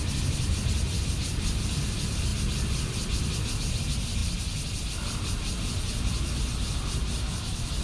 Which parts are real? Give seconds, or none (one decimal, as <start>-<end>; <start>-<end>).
0.0-7.8